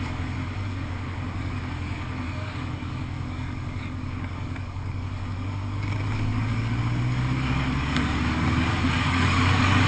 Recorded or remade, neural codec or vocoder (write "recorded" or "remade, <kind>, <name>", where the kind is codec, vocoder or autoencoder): remade, codec, DAC